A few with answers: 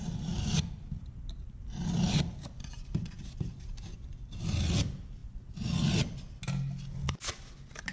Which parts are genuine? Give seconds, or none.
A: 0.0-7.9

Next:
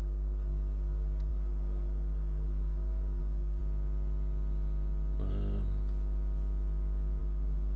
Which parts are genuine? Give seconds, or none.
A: 3.6-7.2

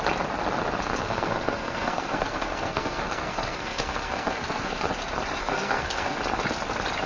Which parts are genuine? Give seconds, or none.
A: 0.0-0.8; 4.9-5.4; 6.2-7.1